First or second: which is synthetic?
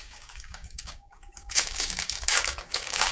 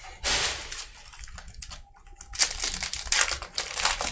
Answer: first